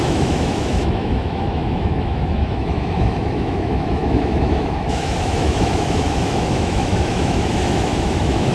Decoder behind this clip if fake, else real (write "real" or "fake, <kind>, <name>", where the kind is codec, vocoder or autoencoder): fake, autoencoder, DAC-VAE